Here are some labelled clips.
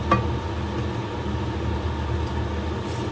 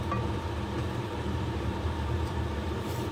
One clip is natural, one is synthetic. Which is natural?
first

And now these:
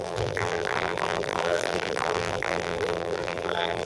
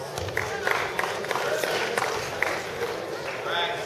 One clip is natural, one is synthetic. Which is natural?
second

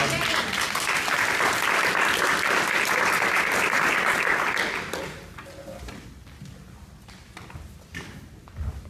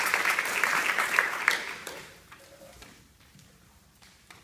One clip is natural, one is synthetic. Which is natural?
first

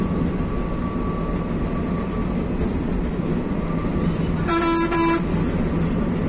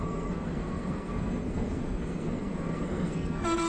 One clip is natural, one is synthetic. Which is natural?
first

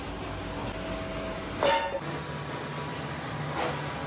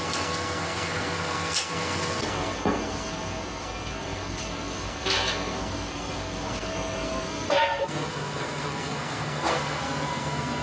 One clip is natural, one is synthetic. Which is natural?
first